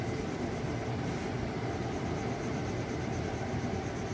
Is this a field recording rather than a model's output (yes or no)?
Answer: yes